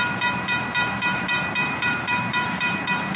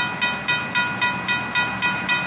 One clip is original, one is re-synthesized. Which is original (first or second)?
second